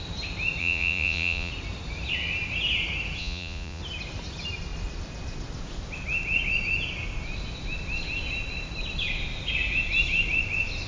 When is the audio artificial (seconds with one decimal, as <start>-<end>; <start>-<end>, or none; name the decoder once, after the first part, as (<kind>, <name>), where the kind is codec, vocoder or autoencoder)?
0.6-1.5 (vocoder, Vocos); 3.2-3.8